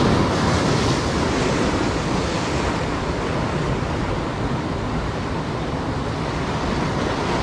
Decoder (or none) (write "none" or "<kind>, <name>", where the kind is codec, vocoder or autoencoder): none